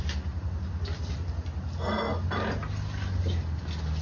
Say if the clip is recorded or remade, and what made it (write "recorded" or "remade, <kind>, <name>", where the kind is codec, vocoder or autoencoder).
recorded